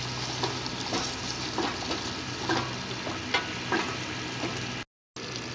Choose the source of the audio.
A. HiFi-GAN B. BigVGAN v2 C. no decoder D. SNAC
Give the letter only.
C